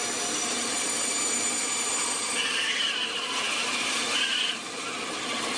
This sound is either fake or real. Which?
fake